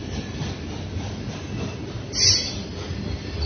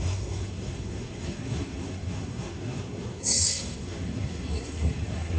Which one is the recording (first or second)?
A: first